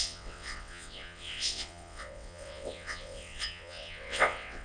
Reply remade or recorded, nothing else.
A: remade